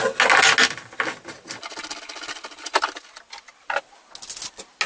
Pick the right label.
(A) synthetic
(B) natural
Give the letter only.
B